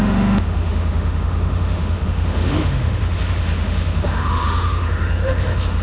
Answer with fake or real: fake